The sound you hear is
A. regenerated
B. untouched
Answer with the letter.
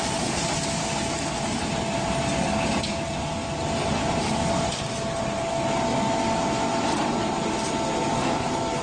B